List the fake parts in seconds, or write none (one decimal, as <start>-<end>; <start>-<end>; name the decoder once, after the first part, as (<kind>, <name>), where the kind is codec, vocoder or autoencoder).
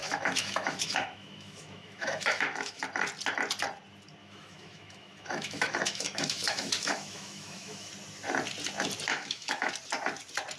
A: 0.0-2.8 (autoencoder, DAC-VAE); 4.2-7.9; 9.1-9.7